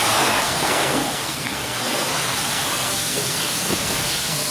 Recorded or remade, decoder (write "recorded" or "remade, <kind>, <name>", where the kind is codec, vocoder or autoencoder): remade, codec, SNAC